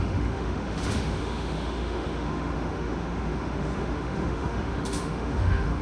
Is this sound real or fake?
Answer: fake